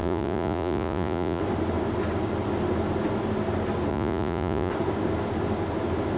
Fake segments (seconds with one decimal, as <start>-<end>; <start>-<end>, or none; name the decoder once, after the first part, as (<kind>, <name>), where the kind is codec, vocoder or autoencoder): 0.0-1.4 (vocoder, Vocos); 3.9-4.7